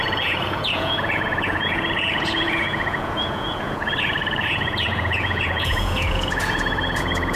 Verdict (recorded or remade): remade